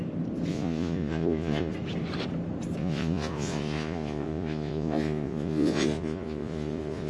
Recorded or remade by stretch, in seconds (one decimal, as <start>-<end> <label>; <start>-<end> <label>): 0.0-0.5 recorded; 0.5-1.7 remade; 1.7-2.8 recorded; 2.8-7.1 remade